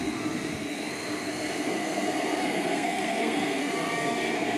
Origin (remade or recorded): remade